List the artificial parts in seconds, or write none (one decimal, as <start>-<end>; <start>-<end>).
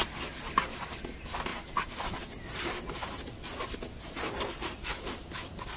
1.5-2.4